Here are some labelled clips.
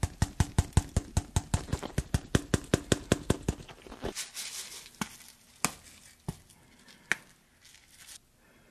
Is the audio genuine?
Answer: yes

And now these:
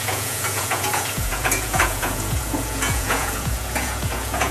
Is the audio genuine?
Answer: no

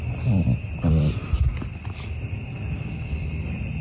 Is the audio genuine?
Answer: yes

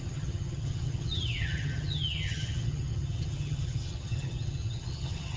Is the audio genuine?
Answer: no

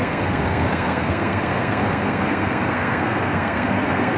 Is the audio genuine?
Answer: no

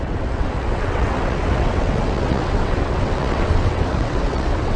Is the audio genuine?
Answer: no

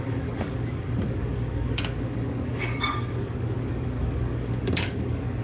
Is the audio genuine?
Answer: no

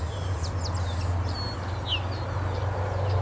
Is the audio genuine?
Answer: yes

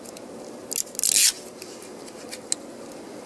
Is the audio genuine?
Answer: yes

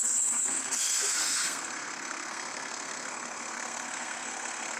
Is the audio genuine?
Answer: no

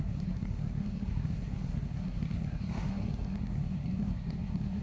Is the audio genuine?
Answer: no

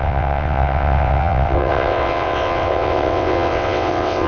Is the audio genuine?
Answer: no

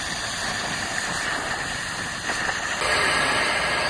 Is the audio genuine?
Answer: yes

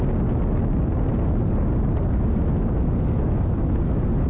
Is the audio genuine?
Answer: yes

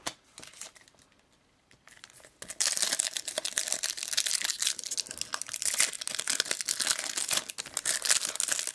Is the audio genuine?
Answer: yes